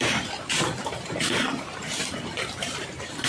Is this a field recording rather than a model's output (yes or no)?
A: no